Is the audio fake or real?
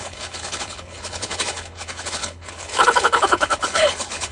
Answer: fake